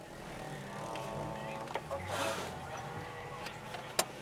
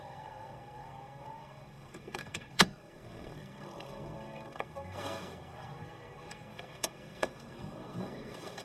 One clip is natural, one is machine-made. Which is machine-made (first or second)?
second